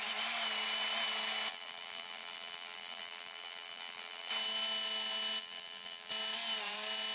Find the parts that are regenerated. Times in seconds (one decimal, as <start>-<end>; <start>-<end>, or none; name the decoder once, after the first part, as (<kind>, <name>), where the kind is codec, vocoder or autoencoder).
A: 1.5-4.3 (vocoder, BigVGAN v2); 5.4-6.1